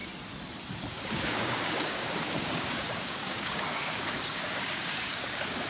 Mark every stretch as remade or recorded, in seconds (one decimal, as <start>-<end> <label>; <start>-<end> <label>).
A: 0.0-0.9 recorded; 0.9-5.7 remade